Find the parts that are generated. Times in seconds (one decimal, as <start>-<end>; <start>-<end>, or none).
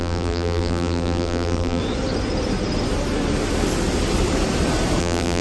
0.0-1.8; 5.0-5.4